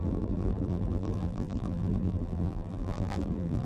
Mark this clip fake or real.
fake